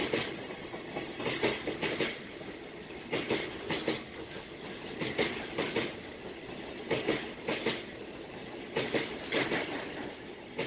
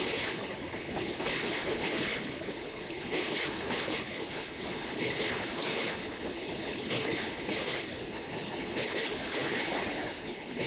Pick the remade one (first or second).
second